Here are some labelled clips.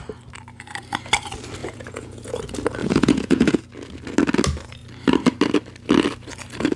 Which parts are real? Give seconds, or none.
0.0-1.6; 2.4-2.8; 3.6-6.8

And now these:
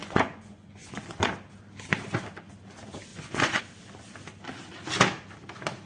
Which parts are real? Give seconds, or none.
1.3-3.1; 3.6-5.8

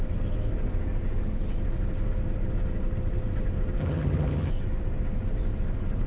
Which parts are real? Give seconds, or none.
0.0-3.8; 4.5-6.1

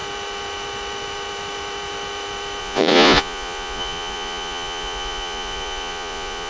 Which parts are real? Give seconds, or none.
0.0-2.6

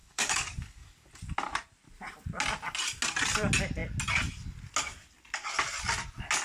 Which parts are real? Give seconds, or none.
1.1-6.4